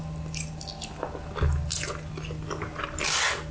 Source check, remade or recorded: recorded